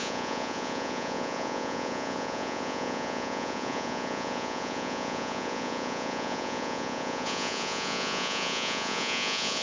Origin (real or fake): fake